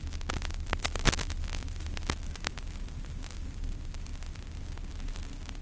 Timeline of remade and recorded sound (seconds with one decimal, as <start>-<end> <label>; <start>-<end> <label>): 0.0-5.6 recorded